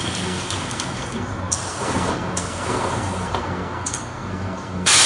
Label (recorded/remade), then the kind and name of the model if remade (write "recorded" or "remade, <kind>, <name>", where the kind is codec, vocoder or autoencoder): remade, codec, SNAC